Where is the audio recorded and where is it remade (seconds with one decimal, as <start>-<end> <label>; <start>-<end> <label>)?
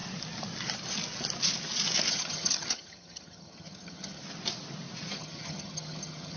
0.0-2.1 recorded; 2.1-4.2 remade; 4.2-5.1 recorded; 5.1-6.4 remade